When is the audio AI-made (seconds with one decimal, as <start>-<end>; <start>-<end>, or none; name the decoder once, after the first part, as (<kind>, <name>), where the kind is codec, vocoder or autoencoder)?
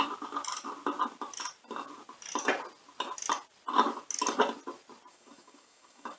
5.1-6.2 (codec, DAC)